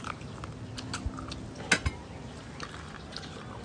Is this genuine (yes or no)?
yes